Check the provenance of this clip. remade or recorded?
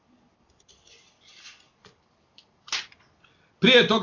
recorded